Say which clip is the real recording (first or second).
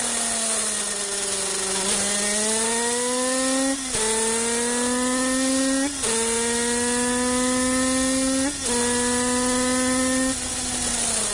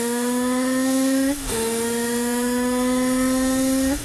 first